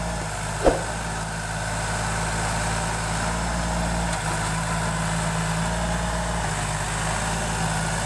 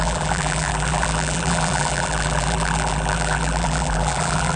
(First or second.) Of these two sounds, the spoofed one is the second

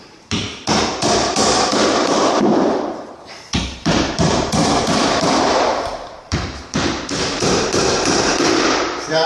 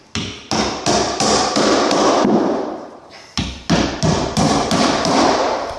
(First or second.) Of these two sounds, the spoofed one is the first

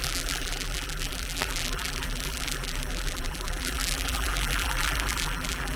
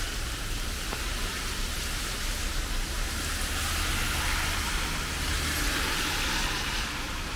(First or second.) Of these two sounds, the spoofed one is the first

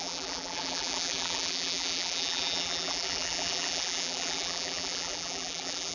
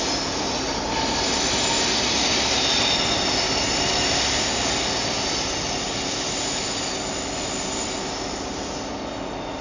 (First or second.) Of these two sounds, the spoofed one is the first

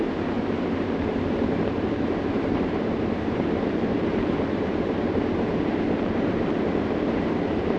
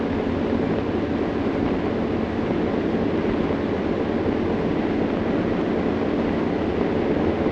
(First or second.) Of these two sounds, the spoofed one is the first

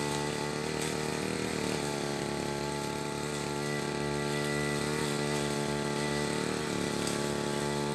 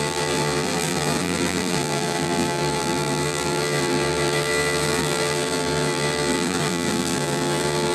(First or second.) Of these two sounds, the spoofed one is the second